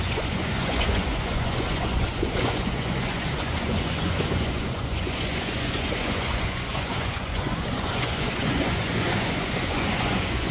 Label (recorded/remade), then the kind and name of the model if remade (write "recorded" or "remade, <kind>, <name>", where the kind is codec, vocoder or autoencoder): remade, vocoder, Vocos